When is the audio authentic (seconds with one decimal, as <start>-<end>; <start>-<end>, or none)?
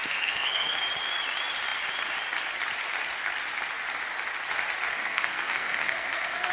0.8-4.9